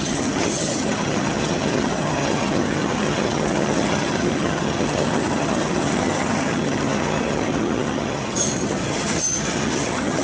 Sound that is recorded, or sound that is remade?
remade